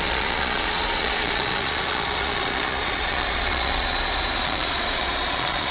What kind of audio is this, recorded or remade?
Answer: remade